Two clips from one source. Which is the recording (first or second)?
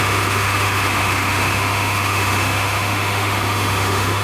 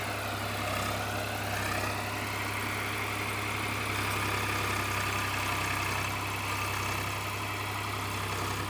second